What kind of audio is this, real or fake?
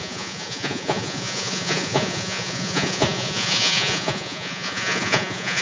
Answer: fake